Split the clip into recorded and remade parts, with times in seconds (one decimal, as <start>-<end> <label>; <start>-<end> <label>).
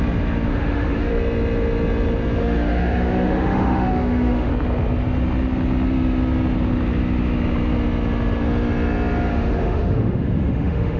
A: 0.0-0.5 recorded; 0.5-1.1 remade; 1.1-2.4 recorded; 2.4-4.5 remade; 4.5-9.3 recorded; 9.3-11.0 remade